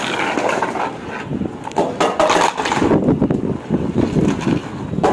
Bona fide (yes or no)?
yes